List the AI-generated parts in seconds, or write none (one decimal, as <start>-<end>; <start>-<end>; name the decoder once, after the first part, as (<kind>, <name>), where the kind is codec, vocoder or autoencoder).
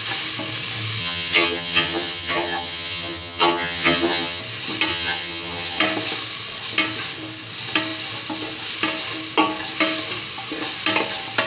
1.0-4.4 (vocoder, HiFi-GAN); 4.9-5.8